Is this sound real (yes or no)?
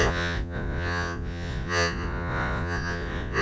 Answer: no